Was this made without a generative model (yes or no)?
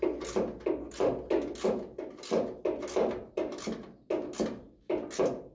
yes